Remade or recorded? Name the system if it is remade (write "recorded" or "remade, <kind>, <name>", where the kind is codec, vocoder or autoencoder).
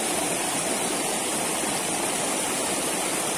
remade, vocoder, BigVGAN v2